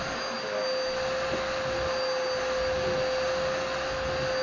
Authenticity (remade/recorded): recorded